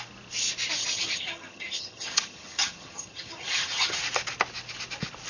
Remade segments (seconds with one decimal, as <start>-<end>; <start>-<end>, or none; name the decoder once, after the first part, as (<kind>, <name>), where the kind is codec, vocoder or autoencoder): 0.8-4.0 (vocoder, HiFi-GAN)